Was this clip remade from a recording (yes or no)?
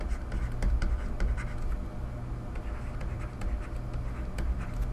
no